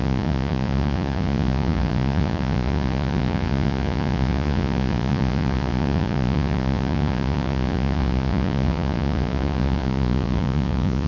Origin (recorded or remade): remade